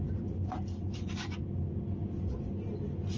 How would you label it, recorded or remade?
recorded